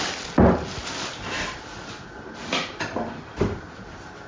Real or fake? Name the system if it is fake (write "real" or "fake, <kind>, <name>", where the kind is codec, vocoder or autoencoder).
real